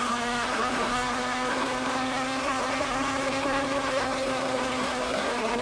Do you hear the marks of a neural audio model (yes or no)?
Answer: yes